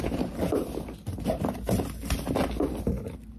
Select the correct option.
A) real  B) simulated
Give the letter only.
A